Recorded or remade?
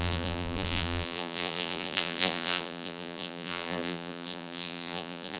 remade